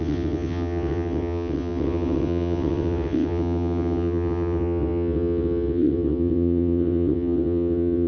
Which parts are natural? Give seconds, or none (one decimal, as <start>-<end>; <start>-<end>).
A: none